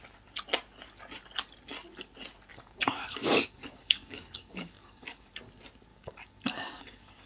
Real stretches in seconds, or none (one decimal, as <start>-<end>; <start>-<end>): 0.0-2.5; 5.3-5.9